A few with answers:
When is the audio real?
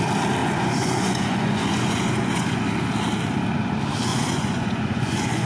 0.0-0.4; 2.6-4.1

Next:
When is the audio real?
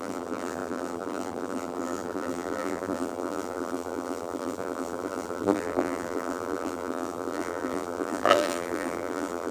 none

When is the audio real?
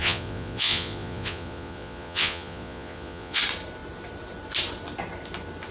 3.4-5.7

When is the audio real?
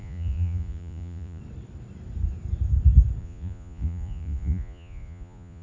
1.4-3.2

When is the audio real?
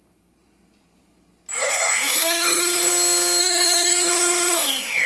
0.0-1.5; 2.9-3.4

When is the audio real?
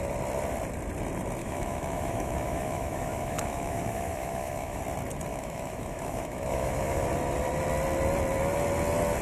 0.0-1.4; 4.8-5.3; 7.0-9.2